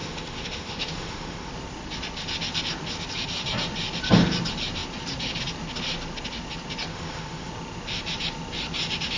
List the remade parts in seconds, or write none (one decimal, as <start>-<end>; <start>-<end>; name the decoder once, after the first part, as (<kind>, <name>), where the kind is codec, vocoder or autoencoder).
0.0-1.5 (autoencoder, DAC-VAE); 6.9-7.5